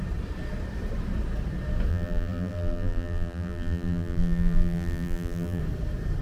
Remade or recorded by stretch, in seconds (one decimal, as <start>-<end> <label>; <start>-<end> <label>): 0.0-1.9 recorded; 1.9-5.6 remade; 5.6-6.2 recorded